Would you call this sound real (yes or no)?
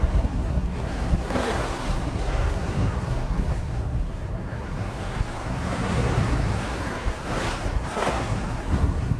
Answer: no